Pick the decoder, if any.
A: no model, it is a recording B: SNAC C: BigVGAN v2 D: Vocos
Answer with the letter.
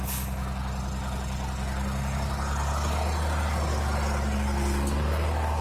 A